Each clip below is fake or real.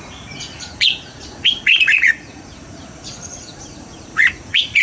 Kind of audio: fake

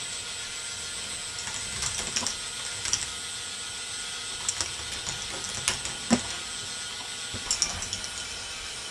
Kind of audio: real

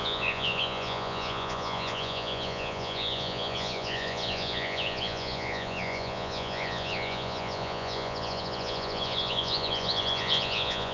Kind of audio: fake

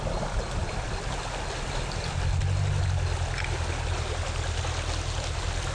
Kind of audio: real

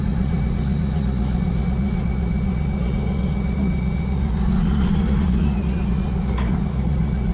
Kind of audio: fake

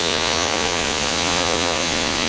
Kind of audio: fake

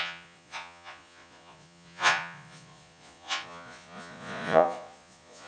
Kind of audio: fake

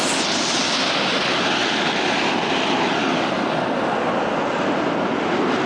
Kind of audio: real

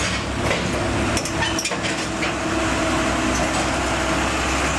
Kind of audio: real